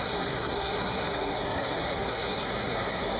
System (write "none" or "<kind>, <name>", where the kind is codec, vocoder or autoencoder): codec, SNAC